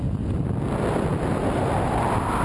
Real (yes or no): yes